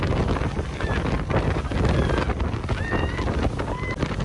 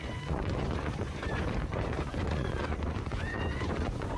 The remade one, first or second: second